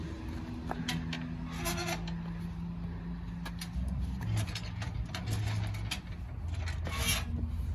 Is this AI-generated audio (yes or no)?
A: no